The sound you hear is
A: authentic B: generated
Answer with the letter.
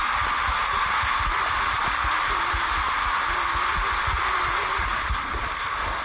A